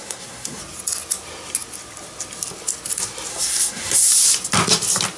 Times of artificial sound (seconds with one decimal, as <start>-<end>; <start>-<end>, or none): 0.0-0.6; 3.3-4.1